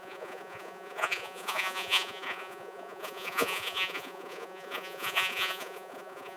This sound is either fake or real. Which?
fake